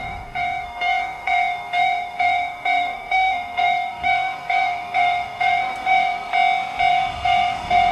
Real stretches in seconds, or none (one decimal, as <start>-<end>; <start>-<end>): 6.3-6.9